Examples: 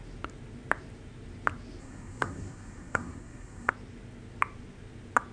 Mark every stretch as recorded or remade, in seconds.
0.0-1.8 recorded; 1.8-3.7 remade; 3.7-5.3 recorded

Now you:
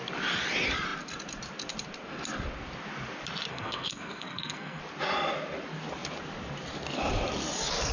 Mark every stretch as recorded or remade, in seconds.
0.0-3.5 recorded; 3.5-4.8 remade; 4.8-7.9 recorded

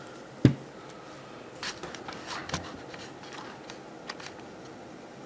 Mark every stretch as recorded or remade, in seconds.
0.0-5.3 recorded

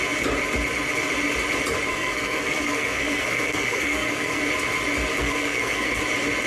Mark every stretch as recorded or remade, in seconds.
0.0-1.9 recorded; 1.9-4.4 remade; 4.4-5.1 recorded; 5.1-6.0 remade; 6.0-6.5 recorded